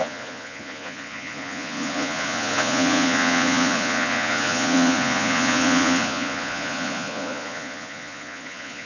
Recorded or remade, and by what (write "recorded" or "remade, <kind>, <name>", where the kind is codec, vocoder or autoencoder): remade, vocoder, Vocos